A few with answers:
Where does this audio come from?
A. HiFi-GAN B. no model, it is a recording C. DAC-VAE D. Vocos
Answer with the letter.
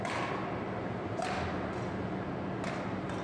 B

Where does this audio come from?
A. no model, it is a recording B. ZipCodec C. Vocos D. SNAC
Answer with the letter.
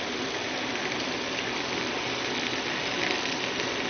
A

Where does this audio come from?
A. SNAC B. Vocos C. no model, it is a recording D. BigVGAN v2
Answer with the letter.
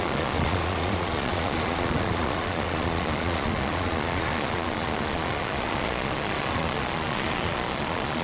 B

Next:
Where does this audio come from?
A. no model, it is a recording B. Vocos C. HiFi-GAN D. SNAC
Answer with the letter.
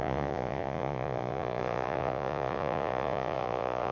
B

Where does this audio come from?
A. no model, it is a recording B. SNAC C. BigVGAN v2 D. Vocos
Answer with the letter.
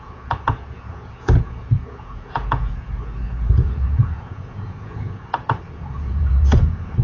D